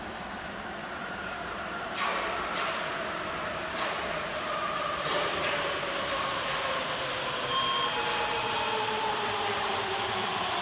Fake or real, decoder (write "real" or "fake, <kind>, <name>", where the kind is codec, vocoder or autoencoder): fake, vocoder, BigVGAN v2